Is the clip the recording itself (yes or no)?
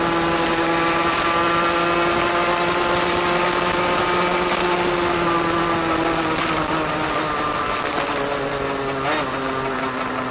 yes